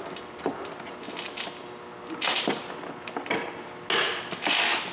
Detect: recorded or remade recorded